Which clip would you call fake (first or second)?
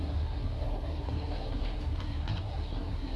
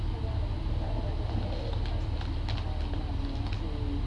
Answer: first